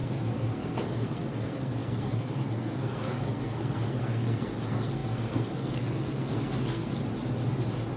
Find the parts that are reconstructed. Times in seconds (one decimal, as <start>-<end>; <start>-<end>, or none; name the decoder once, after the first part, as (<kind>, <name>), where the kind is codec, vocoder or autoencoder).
0.0-7.0 (codec, SNAC)